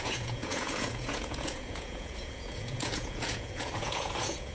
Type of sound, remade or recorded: remade